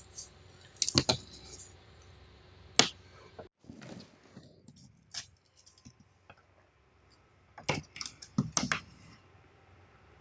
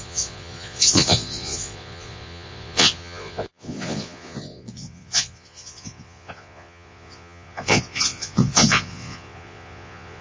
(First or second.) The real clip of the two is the first